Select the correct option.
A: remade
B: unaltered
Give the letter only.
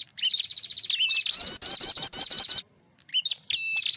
B